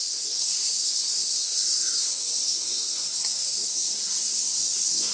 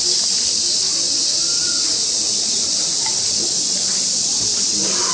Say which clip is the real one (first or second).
second